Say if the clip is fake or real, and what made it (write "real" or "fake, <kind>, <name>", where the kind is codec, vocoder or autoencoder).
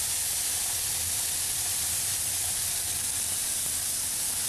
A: real